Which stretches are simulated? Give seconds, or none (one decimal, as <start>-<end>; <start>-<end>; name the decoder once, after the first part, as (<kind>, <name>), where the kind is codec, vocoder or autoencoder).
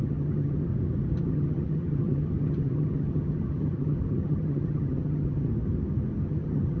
0.0-0.7 (vocoder, HiFi-GAN); 1.2-5.5; 6.2-6.8